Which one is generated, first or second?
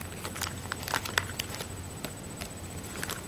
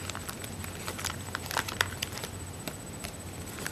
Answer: second